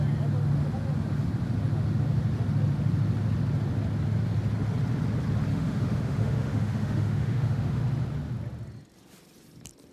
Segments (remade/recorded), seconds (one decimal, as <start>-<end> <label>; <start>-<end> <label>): 0.0-5.5 recorded; 5.5-7.8 remade; 7.8-9.9 recorded